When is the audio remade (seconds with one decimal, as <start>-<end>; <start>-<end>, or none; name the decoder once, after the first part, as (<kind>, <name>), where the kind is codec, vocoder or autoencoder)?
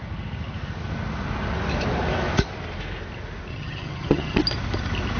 3.5-4.4 (vocoder, HiFi-GAN)